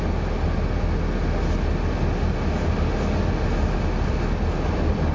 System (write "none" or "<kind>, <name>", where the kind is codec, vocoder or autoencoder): none